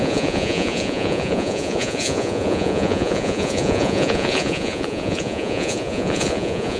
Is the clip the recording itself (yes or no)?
no